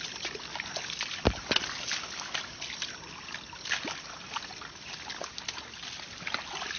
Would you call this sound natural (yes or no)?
yes